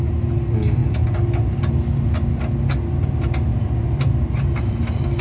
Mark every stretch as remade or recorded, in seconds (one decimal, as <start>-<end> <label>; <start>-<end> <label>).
0.0-3.5 recorded; 3.5-4.1 remade; 4.1-5.2 recorded

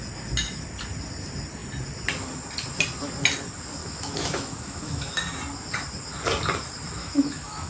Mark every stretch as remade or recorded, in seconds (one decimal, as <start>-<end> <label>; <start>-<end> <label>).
0.0-3.8 recorded; 3.8-5.2 remade; 5.2-7.0 recorded; 7.0-7.7 remade

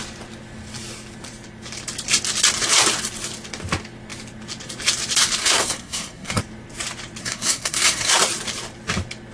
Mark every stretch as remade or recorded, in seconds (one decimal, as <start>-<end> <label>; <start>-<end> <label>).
0.0-5.4 recorded; 5.4-6.4 remade; 6.4-7.2 recorded; 7.2-8.1 remade; 8.1-9.3 recorded